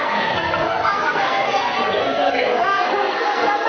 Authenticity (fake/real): fake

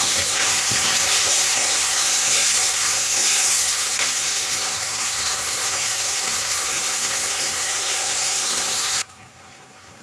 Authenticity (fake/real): fake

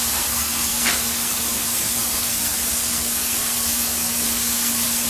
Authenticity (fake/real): fake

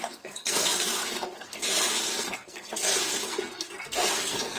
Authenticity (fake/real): fake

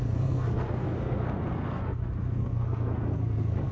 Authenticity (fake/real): fake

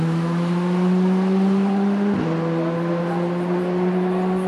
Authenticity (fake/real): real